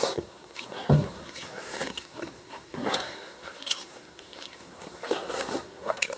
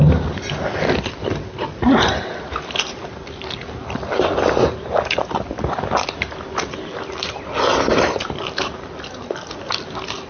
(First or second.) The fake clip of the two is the first